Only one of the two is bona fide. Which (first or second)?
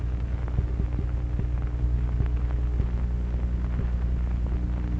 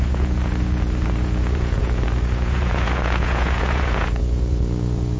first